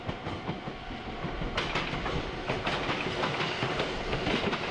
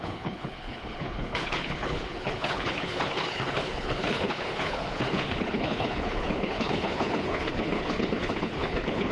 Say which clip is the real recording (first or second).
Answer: first